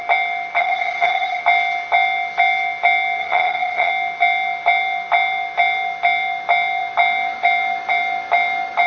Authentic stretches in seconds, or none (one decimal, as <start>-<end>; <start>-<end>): 0.0-0.6; 1.4-3.2; 3.9-8.9